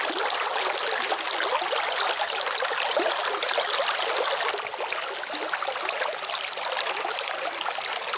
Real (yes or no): yes